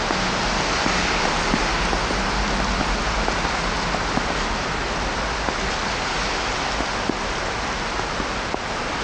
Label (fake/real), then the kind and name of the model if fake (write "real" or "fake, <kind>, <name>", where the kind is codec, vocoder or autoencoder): real